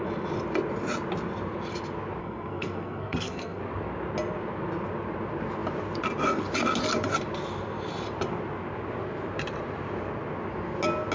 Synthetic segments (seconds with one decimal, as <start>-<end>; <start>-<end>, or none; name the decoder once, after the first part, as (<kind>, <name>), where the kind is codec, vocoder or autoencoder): 2.2-3.6 (codec, SNAC)

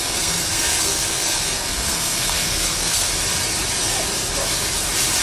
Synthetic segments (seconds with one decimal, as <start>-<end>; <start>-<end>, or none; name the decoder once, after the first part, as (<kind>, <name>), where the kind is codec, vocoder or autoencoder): 0.0-3.1 (codec, SNAC)